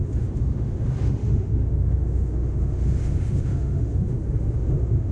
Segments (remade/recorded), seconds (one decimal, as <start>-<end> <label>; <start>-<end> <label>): 0.0-5.1 remade